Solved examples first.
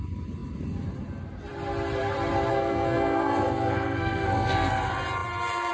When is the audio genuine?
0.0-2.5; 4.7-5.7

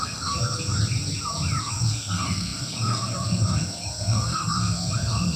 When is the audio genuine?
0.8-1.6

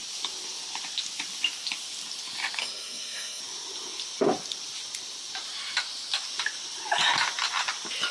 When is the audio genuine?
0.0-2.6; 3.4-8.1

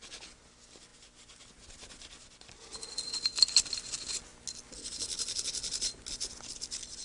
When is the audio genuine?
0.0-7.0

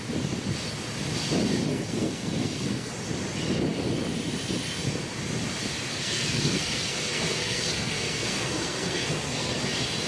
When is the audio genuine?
0.0-1.7; 2.9-5.9; 9.6-10.1

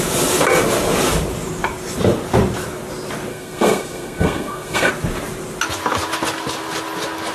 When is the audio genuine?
0.0-3.3; 4.9-7.3